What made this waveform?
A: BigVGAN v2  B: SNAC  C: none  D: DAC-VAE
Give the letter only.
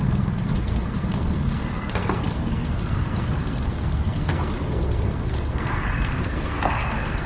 B